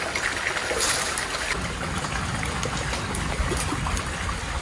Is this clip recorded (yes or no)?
yes